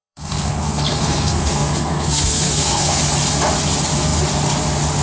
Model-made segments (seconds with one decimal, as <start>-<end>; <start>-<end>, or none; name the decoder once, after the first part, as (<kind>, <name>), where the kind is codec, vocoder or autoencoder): 0.0-3.0 (codec, SNAC)